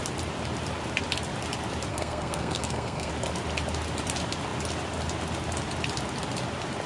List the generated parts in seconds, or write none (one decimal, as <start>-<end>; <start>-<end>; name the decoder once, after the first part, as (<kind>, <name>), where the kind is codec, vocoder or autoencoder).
1.9-3.1 (codec, SNAC)